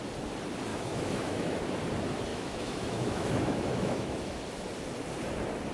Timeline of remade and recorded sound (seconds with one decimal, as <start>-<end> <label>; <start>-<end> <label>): 0.0-0.7 recorded; 0.7-1.6 remade; 1.6-2.3 recorded; 2.3-4.4 remade; 4.4-5.7 recorded